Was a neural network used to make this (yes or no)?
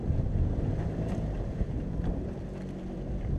no